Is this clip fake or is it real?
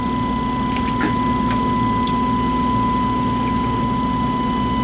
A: real